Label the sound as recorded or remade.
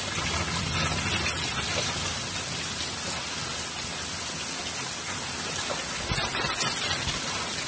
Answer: recorded